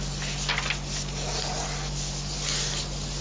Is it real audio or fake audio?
real